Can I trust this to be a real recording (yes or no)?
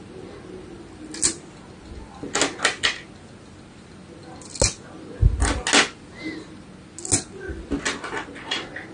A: yes